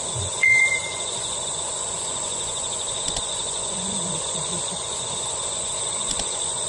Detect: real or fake fake